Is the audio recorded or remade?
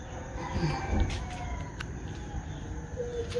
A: recorded